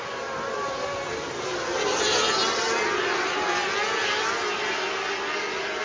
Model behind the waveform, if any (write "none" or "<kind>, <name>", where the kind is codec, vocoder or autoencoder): none